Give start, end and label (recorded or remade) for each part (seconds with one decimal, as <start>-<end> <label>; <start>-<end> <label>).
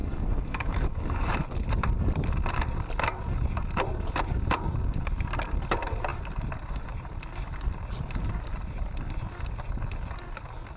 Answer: 0.0-1.3 remade; 1.3-10.8 recorded